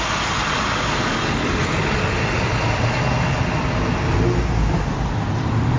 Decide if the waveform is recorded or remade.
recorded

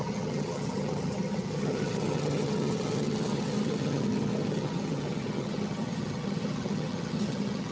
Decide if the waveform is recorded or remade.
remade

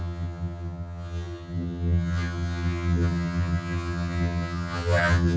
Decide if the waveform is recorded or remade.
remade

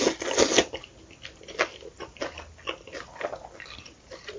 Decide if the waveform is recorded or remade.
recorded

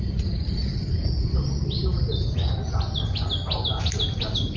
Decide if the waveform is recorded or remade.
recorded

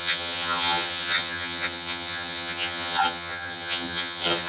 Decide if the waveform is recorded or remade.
remade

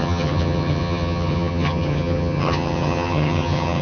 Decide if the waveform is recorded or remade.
remade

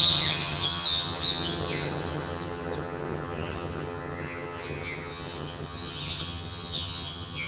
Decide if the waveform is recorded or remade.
remade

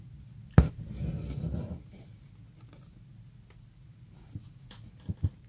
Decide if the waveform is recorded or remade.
recorded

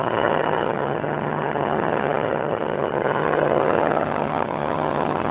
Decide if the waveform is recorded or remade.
remade